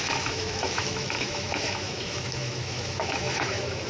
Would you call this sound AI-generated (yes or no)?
yes